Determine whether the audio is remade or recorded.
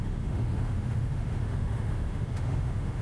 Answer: remade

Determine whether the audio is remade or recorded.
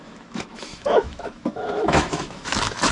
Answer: remade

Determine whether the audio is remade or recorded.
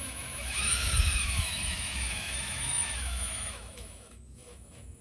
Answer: remade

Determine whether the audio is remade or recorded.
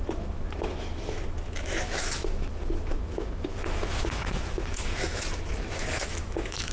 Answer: remade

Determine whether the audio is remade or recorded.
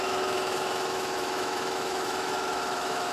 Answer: remade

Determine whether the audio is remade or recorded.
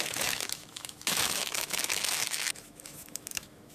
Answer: remade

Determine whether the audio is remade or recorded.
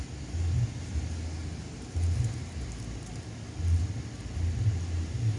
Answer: recorded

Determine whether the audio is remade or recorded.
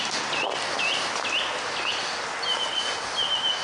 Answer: recorded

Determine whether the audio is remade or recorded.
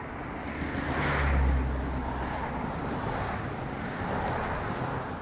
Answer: recorded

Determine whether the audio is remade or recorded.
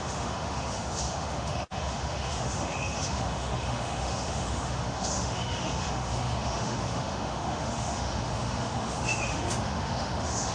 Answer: remade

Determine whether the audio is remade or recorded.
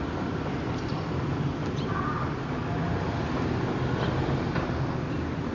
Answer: recorded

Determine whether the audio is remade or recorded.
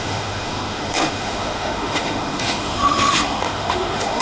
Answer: remade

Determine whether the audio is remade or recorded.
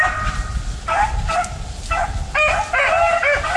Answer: recorded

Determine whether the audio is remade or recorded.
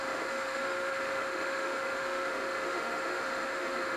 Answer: remade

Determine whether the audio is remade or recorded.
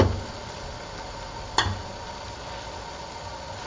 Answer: recorded